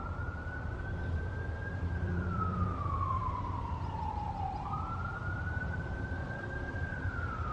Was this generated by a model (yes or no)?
yes